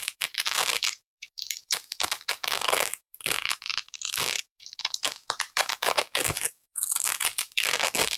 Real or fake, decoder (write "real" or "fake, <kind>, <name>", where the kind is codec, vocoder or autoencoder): fake, codec, DAC